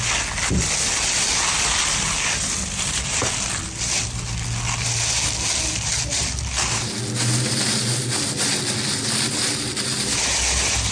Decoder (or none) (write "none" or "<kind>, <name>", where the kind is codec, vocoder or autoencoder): none